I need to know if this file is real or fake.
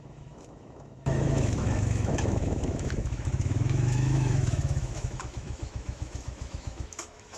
fake